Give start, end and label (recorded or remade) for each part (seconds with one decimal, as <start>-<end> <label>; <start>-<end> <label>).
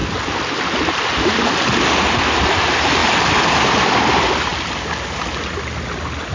0.0-6.3 recorded